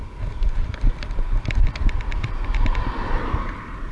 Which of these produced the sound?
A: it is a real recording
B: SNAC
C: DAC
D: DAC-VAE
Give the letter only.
A